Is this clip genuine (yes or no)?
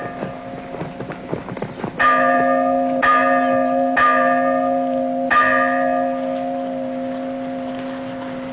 yes